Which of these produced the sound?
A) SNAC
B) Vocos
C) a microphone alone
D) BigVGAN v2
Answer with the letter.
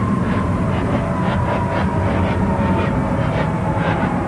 C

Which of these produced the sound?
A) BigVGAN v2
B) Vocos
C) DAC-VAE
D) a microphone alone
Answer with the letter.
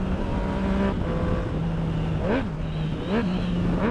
D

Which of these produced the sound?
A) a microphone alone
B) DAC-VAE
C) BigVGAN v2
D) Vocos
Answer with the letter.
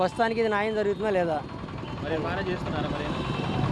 A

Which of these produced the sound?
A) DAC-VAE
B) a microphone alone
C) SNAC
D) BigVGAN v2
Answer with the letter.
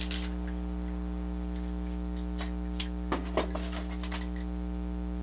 B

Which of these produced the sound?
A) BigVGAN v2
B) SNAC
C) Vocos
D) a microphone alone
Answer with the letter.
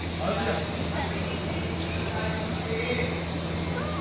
D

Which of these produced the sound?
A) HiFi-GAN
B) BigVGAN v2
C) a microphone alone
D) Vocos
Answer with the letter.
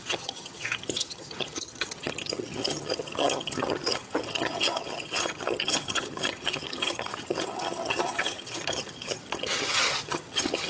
A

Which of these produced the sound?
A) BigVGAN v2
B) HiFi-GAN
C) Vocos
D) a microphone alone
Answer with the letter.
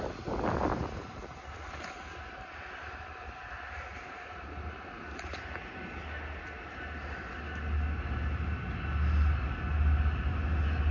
D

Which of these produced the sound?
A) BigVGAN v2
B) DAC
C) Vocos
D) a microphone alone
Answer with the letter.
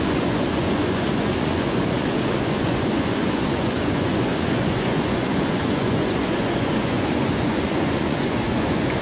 C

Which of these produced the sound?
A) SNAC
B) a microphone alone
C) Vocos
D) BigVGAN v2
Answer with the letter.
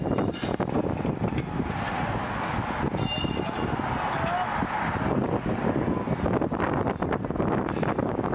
B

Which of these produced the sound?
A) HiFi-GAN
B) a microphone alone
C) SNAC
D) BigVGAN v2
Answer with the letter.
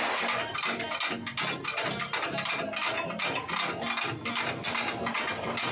B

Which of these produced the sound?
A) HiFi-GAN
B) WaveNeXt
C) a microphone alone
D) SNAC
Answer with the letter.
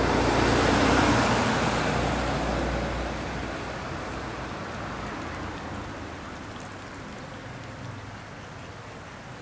C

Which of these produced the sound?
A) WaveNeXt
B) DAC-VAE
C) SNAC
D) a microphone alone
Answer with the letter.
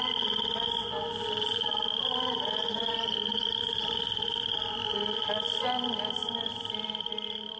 D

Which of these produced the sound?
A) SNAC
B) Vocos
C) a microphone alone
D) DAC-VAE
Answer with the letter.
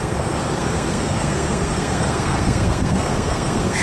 A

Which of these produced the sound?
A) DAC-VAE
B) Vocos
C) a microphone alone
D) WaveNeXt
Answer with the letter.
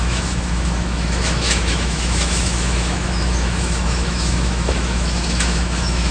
A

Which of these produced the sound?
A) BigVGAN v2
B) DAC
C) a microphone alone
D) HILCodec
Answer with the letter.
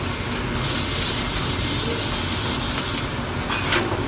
C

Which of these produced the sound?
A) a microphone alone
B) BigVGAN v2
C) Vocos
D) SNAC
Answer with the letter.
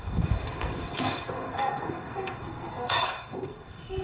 D